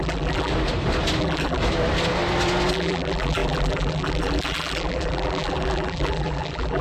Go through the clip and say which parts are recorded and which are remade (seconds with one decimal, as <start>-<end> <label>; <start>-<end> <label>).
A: 0.0-0.5 remade; 0.5-1.2 recorded; 1.2-1.6 remade; 1.6-2.7 recorded; 2.7-6.8 remade

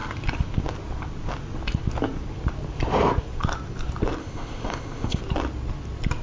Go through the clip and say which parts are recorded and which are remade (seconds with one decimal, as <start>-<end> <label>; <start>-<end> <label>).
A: 0.0-4.2 recorded; 4.2-5.2 remade; 5.2-6.2 recorded

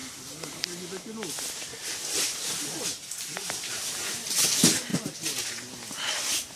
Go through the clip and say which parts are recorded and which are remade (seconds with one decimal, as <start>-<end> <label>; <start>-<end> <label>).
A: 0.0-4.0 remade; 4.0-6.6 recorded